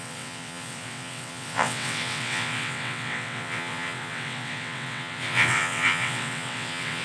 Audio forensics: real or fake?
fake